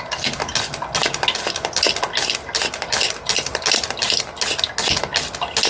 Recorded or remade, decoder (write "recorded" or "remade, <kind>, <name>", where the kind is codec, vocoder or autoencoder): recorded